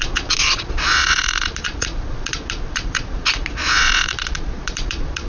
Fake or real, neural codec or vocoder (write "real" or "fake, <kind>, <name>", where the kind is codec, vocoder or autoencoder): fake, vocoder, Vocos